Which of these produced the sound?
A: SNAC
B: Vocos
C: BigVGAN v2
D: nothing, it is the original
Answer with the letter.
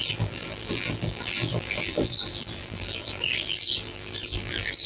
C